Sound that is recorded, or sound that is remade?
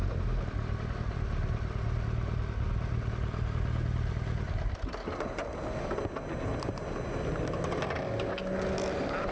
recorded